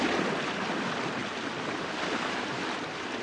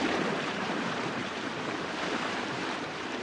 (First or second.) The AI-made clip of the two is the second